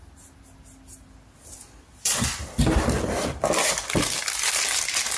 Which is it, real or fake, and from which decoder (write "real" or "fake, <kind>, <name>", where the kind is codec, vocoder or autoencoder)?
real